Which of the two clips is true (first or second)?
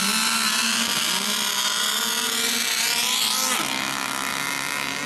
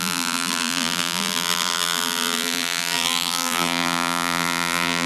first